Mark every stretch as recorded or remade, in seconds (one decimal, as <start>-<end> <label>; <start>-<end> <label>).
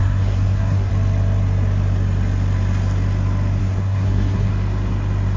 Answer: 0.0-0.9 remade; 0.9-3.6 recorded; 3.6-4.5 remade; 4.5-5.4 recorded